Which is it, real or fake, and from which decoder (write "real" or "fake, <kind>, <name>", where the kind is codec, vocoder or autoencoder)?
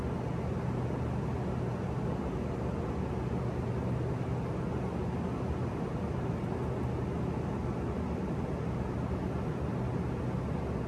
real